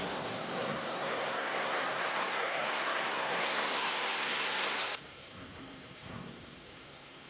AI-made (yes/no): yes